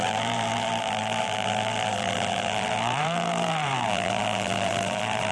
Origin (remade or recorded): remade